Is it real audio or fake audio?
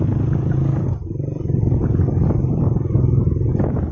real